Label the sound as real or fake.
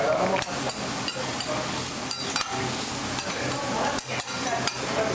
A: real